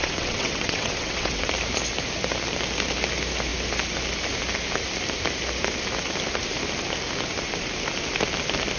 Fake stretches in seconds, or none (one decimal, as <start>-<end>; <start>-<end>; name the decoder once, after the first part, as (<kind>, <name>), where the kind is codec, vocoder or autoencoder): 0.0-1.5 (vocoder, WaveNeXt)